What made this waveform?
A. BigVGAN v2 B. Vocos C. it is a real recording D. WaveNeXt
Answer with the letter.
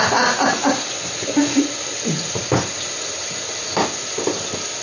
C